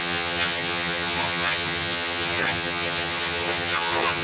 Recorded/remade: remade